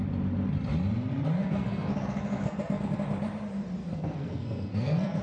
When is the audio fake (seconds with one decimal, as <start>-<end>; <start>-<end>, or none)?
1.4-3.0; 3.8-5.2